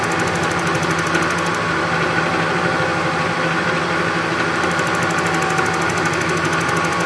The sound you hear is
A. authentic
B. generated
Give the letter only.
A